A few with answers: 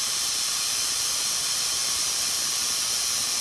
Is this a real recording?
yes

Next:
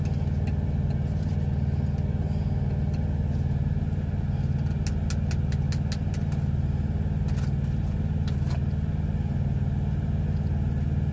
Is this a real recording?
yes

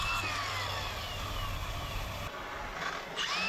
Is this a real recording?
yes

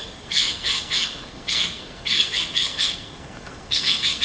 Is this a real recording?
no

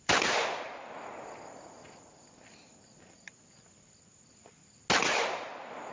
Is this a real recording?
yes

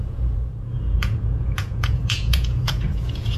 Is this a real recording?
no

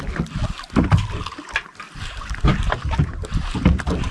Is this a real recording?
yes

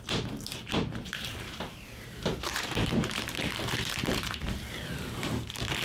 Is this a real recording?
no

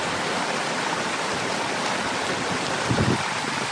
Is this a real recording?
yes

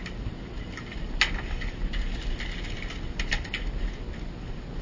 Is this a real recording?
yes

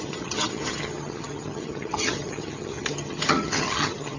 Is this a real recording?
no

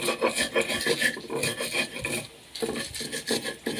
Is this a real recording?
yes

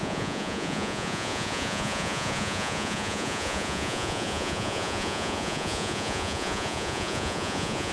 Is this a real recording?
no